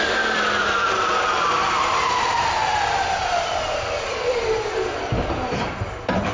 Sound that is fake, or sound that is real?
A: fake